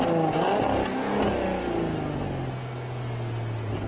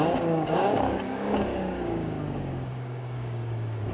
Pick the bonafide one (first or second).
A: first